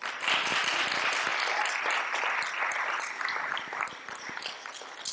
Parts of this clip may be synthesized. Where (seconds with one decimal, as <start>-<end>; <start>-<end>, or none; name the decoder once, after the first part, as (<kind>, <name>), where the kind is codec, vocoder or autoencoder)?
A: none